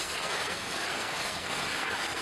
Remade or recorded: remade